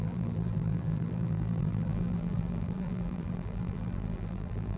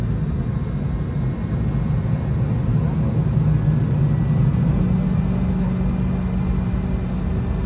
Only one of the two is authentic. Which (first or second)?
second